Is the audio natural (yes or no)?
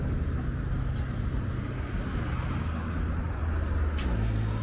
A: yes